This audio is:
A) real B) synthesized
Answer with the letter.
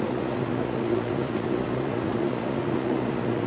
B